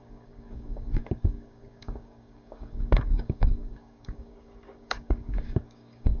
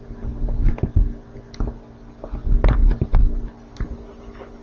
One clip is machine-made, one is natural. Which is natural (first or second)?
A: second